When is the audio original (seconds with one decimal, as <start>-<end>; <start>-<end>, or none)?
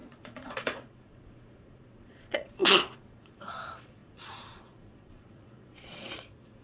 none